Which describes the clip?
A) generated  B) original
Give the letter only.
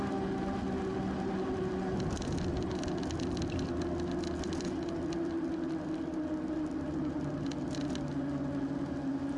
B